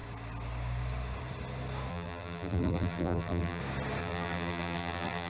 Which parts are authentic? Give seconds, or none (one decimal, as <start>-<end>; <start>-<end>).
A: 0.0-1.9; 3.6-4.0